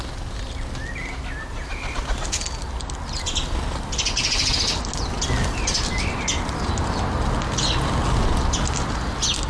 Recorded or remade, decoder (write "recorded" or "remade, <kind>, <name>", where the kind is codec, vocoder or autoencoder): recorded